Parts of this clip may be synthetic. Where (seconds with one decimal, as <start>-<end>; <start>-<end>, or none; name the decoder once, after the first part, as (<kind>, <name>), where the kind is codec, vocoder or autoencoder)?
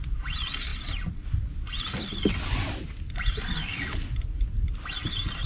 none